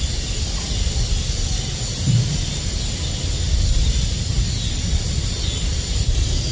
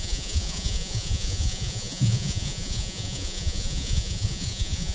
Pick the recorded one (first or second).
first